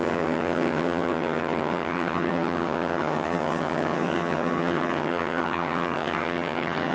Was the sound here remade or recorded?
remade